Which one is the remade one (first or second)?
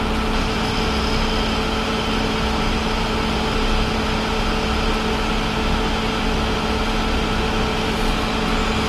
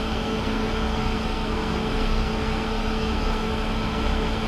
second